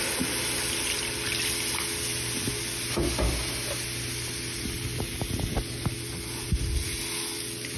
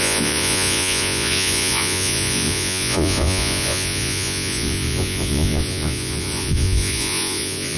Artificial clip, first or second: second